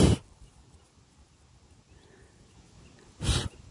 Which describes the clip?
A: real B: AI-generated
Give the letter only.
A